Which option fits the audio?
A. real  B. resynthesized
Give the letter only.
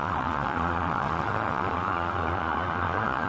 B